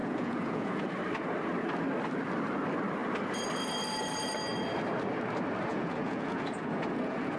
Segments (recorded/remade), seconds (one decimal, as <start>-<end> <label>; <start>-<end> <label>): 0.0-0.8 remade; 0.8-5.7 recorded; 5.7-7.4 remade